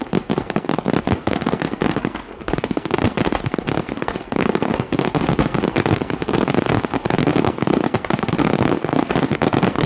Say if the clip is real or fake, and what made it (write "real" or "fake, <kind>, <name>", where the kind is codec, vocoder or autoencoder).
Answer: fake, codec, SNAC